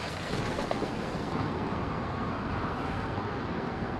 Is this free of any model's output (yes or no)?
no